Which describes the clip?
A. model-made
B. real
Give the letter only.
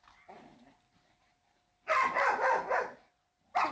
A